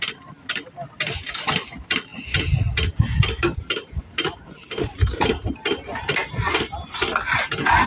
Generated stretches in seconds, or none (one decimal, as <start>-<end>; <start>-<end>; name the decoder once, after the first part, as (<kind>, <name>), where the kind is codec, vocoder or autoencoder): none